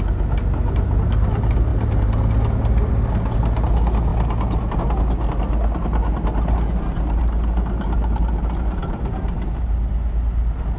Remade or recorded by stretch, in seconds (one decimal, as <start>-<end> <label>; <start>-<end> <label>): 0.0-10.8 recorded